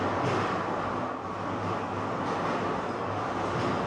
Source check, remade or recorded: recorded